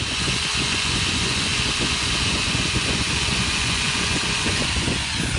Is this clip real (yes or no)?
no